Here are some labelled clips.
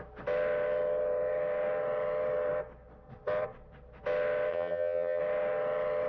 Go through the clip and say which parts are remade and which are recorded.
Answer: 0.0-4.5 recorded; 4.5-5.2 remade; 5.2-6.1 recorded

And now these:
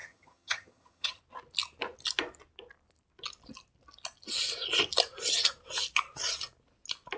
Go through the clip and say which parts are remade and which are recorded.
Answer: 0.0-1.2 remade; 1.2-7.2 recorded

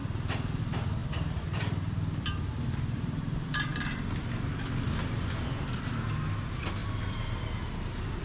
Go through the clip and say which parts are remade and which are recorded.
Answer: 0.0-0.6 remade; 0.6-1.0 recorded; 1.0-5.7 remade; 5.7-8.2 recorded

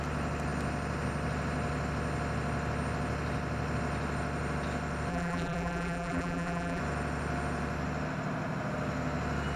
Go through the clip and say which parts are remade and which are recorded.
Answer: 0.0-5.1 recorded; 5.1-6.8 remade; 6.8-9.6 recorded

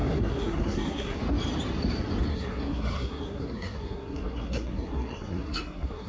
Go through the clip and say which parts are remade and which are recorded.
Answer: 0.0-1.2 remade; 1.2-2.3 recorded; 2.3-6.1 remade

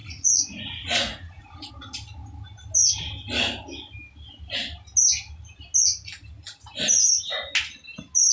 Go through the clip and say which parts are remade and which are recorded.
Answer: 0.0-1.7 remade; 1.7-8.3 recorded

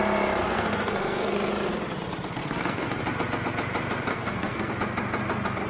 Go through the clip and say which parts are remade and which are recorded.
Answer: 0.0-0.4 recorded; 0.4-1.5 remade; 1.5-2.4 recorded; 2.4-3.0 remade; 3.0-4.1 recorded; 4.1-4.7 remade; 4.7-5.7 recorded